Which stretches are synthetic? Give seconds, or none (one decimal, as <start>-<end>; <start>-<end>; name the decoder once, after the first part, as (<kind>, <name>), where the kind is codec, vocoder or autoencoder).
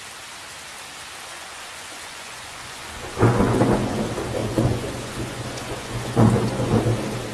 1.3-4.0 (vocoder, Vocos); 4.4-6.8